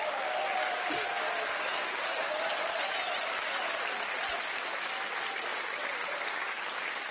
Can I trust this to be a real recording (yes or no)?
yes